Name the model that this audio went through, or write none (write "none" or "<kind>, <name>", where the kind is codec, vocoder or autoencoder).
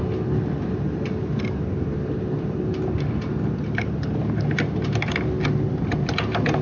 none